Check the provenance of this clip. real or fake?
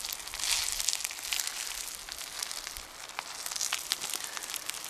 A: real